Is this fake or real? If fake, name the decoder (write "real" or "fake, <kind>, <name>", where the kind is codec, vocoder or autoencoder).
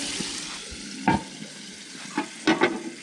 real